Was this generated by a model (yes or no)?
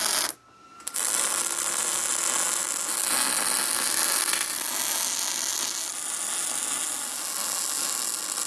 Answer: no